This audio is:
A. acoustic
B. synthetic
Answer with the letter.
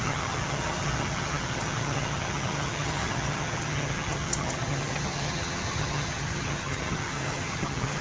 B